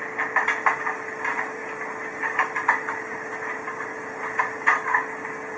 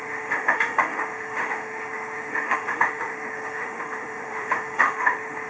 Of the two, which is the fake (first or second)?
second